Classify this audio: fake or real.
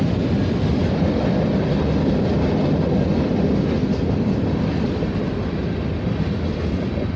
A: real